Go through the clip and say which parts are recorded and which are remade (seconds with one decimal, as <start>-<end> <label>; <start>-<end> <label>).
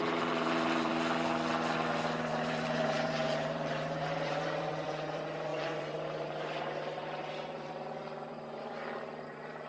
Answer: 0.0-0.9 remade; 0.9-2.3 recorded; 2.3-9.7 remade